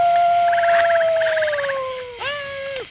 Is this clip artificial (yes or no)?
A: no